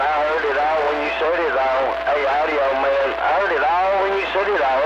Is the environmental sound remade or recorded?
recorded